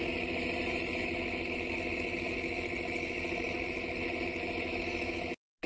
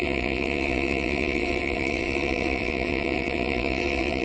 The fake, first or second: second